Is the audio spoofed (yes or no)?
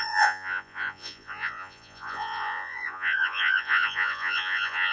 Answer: yes